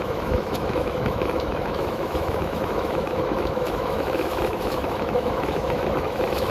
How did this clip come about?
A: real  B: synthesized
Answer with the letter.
B